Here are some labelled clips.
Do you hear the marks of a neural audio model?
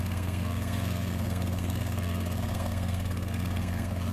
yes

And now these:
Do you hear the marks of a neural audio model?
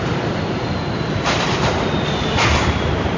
no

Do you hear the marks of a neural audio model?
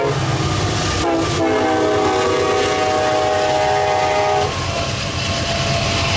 no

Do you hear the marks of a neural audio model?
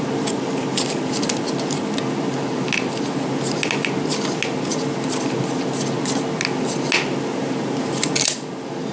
no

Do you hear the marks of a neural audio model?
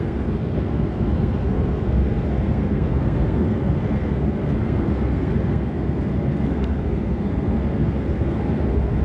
yes